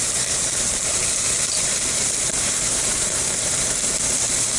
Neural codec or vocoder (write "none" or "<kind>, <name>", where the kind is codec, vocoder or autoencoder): vocoder, BigVGAN v2